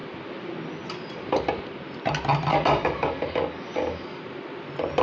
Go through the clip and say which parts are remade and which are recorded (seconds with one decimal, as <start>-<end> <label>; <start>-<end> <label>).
0.0-2.5 recorded; 2.5-4.2 remade; 4.2-5.0 recorded